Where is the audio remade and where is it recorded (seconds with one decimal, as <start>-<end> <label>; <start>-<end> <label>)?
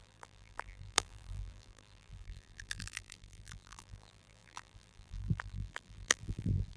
0.0-6.8 remade